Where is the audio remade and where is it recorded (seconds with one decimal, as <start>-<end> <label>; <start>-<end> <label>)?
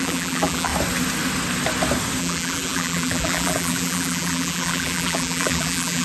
0.0-0.7 remade; 0.7-2.2 recorded; 2.2-6.0 remade